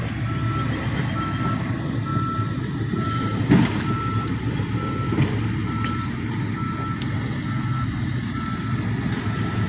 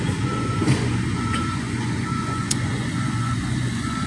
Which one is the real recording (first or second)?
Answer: first